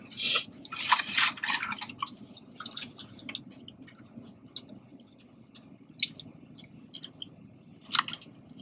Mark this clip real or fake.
real